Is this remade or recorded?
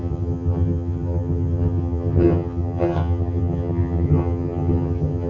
remade